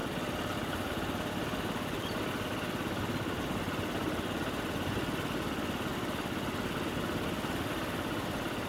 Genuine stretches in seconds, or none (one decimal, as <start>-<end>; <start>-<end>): 0.0-8.7